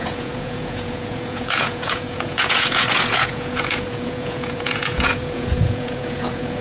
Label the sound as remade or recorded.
remade